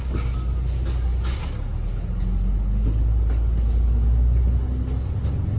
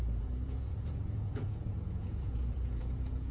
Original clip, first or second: first